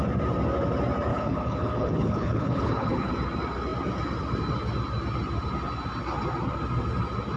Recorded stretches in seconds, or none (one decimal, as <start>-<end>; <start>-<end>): 0.0-1.1; 3.1-7.4